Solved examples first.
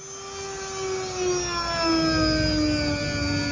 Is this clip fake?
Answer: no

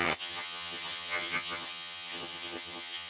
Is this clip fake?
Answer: yes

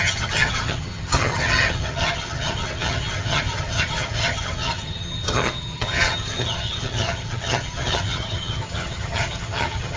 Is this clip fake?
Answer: yes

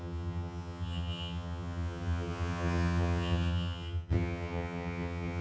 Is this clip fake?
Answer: yes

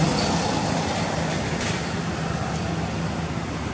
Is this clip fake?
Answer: no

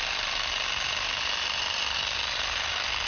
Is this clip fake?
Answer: no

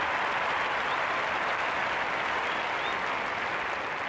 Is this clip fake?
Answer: no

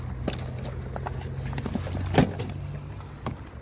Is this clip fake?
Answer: no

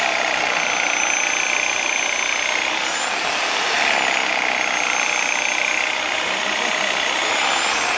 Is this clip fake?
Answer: no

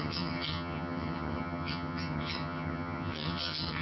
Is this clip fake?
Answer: yes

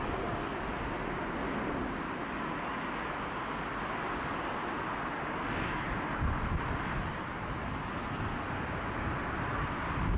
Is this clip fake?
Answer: no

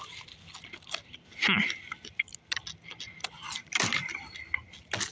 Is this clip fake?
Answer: no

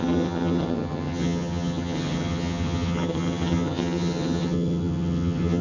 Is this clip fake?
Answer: yes